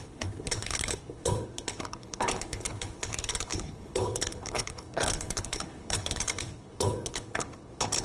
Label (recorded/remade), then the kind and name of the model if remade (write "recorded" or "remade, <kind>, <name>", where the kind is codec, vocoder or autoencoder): remade, codec, HILCodec